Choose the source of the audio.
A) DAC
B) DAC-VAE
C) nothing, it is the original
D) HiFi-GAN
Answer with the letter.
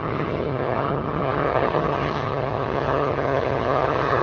D